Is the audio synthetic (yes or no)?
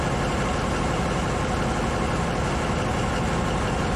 no